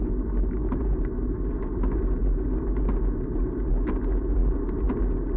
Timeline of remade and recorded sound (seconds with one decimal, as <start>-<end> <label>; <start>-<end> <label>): 0.0-5.4 recorded